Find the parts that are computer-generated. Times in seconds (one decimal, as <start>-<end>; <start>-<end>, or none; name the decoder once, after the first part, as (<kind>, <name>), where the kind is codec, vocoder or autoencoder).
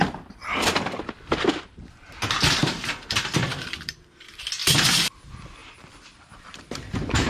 2.6-4.0 (vocoder, BigVGAN v2); 5.6-7.3